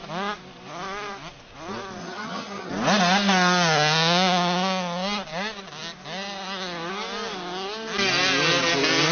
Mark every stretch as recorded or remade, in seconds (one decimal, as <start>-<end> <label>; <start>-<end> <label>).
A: 0.0-2.0 recorded; 2.0-2.7 remade; 2.7-9.1 recorded

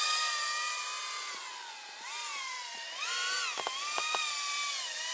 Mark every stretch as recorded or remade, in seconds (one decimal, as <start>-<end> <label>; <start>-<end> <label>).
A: 0.0-5.1 recorded

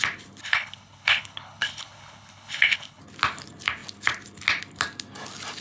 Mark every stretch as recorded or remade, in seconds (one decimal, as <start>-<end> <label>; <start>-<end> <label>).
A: 0.0-0.4 recorded; 0.4-3.0 remade; 3.0-5.6 recorded

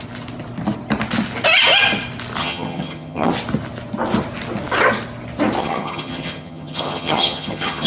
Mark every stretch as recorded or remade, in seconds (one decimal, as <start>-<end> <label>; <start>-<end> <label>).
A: 0.0-2.4 recorded; 2.4-3.3 remade; 3.3-5.6 recorded; 5.6-7.9 remade